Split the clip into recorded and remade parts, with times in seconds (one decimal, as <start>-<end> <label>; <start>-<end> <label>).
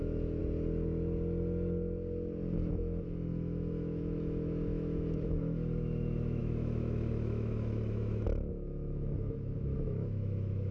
0.0-0.4 remade; 0.4-2.7 recorded; 2.7-10.7 remade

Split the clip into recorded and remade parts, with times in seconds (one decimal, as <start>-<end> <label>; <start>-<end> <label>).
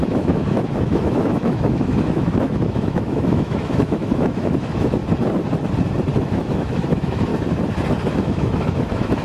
0.0-5.0 remade; 5.0-6.2 recorded; 6.2-7.3 remade; 7.3-8.1 recorded; 8.1-9.2 remade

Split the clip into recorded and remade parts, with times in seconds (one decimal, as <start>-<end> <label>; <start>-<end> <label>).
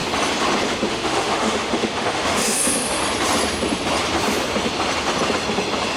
0.0-0.9 recorded; 0.9-3.0 remade; 3.0-6.0 recorded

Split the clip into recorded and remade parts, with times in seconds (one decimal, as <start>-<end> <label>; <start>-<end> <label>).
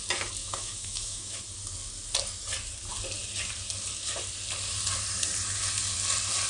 0.0-0.4 recorded; 0.4-1.4 remade; 1.4-6.5 recorded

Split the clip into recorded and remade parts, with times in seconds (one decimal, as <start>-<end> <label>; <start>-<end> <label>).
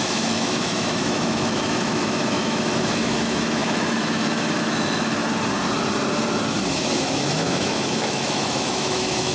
0.0-5.2 remade; 5.2-6.7 recorded; 6.7-9.3 remade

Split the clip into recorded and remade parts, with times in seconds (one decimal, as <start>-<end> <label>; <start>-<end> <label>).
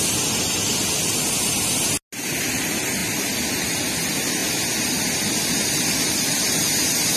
0.0-7.2 recorded